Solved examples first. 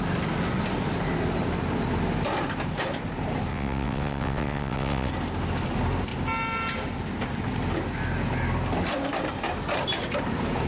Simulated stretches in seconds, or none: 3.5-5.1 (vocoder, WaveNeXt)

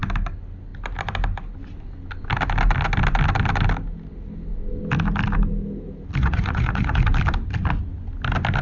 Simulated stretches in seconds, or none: 6.2-7.0 (vocoder, Vocos)

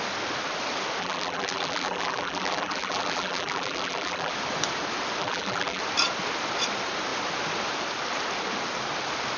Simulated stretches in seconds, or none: 1.0-4.3 (vocoder, BigVGAN v2); 5.2-5.8